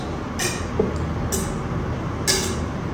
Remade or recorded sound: recorded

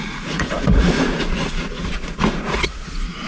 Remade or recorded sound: remade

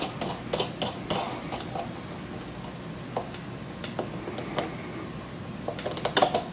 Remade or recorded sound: recorded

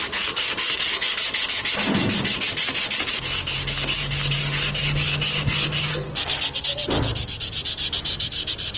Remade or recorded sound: recorded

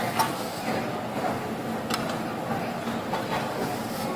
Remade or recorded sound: recorded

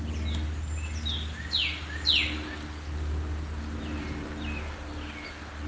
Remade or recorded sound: recorded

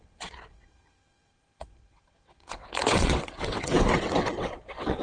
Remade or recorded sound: remade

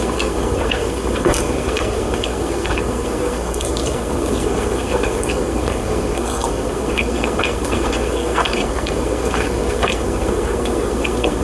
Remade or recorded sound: remade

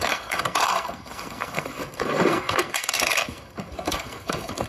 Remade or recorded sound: remade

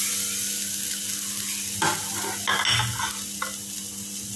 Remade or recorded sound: recorded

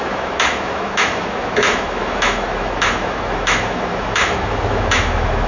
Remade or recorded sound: remade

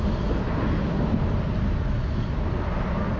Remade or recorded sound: recorded